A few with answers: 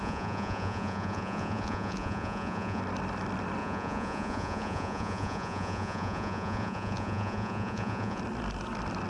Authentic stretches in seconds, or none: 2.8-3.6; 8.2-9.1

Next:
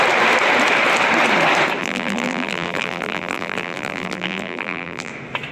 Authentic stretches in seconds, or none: 0.0-1.8; 5.1-5.5

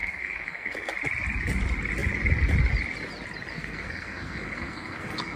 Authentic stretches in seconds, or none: 0.9-3.5

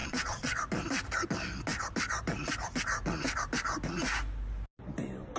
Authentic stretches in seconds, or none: 0.6-5.4

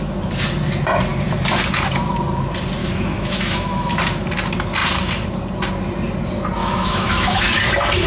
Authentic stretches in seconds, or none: 0.0-2.8; 4.0-6.6; 7.6-8.1